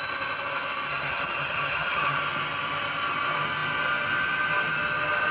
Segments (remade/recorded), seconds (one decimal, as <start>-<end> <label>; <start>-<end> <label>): 0.0-0.9 recorded; 0.9-2.2 remade; 2.2-5.3 recorded

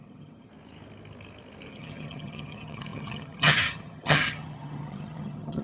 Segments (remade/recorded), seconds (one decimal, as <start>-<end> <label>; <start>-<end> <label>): 0.0-0.5 remade; 0.5-1.7 recorded; 1.7-5.6 remade

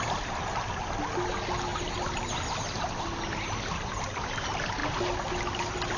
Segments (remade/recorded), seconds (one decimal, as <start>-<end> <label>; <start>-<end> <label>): 0.0-6.0 recorded